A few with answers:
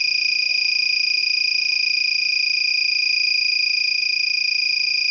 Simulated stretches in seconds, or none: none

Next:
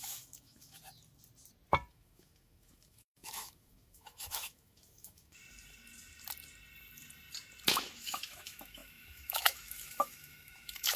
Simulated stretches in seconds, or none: 0.0-0.8 (autoencoder, DAC-VAE); 1.9-5.4; 7.7-11.0

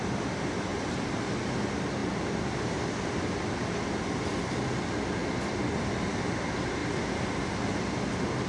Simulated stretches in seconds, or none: 0.7-1.3 (vocoder, BigVGAN v2); 6.8-7.4

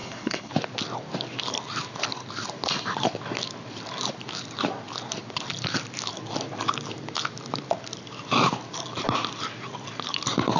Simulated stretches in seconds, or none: 0.0-0.5 (codec, HILCodec)

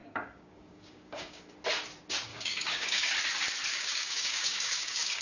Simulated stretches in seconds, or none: 0.0-1.5 (codec, DAC); 2.3-3.1; 3.7-5.2